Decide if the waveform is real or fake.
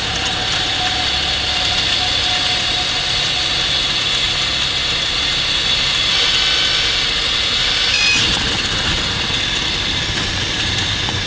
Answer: real